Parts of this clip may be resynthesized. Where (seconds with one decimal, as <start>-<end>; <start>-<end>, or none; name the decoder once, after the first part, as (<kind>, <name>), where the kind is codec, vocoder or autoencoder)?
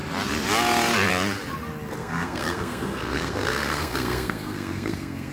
2.0-5.3 (codec, SNAC)